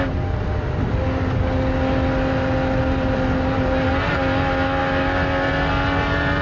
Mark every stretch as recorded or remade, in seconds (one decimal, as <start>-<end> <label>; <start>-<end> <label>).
0.0-6.4 recorded